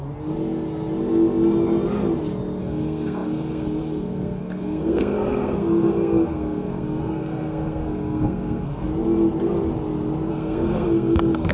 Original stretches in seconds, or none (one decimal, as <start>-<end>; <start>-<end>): 0.0-2.6; 8.9-10.3

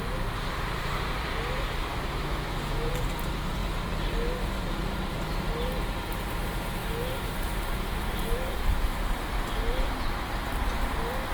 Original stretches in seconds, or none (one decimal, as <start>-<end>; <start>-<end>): 0.0-1.9; 2.9-11.3

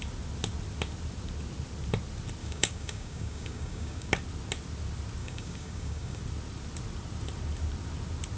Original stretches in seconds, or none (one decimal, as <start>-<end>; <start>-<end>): 0.0-2.4; 4.1-5.2; 6.2-8.4